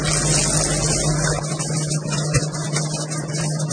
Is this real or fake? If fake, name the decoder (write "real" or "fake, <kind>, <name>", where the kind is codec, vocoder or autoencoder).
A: real